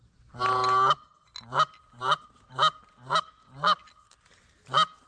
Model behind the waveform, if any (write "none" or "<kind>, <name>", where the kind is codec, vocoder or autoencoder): none